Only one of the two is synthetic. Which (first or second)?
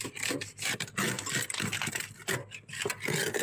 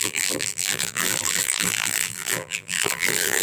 second